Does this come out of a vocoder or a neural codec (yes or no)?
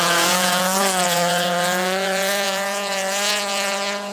yes